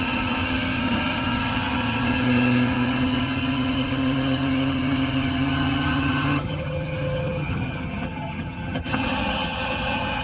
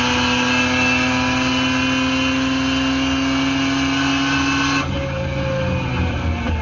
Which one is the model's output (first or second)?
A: first